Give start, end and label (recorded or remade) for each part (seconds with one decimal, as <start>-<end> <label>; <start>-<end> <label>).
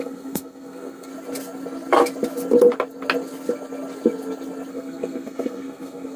0.0-1.1 remade; 1.1-4.7 recorded; 4.7-6.2 remade